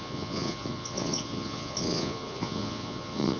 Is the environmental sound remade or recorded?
remade